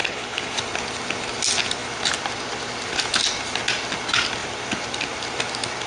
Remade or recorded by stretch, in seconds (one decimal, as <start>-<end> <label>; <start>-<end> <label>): 0.0-0.6 remade; 0.6-5.9 recorded